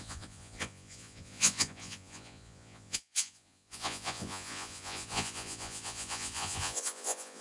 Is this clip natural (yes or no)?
no